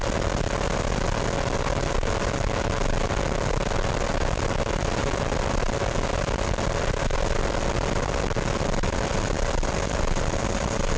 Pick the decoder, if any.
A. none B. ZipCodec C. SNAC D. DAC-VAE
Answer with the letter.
A